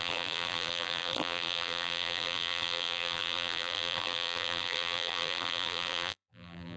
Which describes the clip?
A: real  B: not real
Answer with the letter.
B